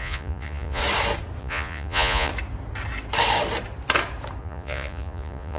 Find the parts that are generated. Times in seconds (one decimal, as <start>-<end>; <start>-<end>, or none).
0.0-0.8; 1.4-2.3; 4.4-5.6